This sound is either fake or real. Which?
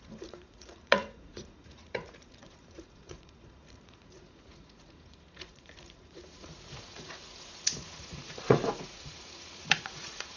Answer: fake